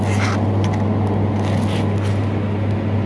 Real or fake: real